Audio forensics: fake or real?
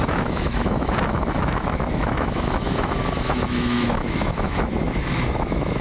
fake